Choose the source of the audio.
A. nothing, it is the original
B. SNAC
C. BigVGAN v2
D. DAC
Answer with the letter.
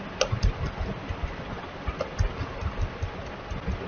A